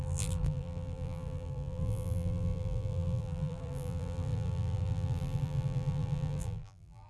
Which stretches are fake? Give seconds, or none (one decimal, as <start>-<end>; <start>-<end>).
0.0-7.1